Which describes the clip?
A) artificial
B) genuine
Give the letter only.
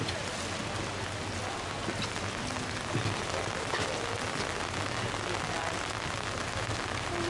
B